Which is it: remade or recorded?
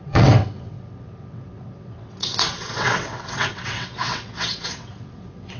remade